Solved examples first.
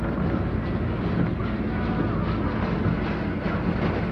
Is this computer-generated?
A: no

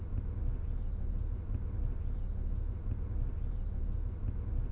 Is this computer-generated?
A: no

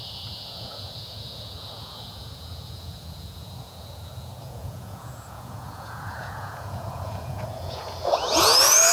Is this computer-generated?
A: yes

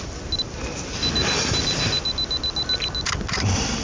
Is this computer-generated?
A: no